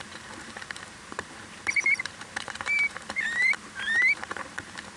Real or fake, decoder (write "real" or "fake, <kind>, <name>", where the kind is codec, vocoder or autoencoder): fake, vocoder, BigVGAN v2